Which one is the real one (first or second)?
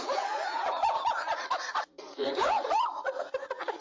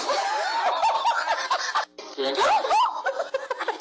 second